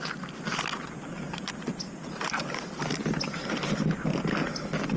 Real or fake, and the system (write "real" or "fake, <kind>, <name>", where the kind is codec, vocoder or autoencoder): real